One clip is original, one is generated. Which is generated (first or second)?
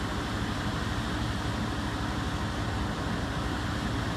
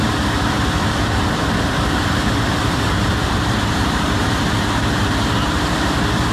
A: second